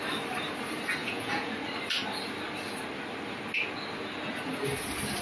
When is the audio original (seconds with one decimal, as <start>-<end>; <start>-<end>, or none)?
0.0-1.0; 1.5-5.2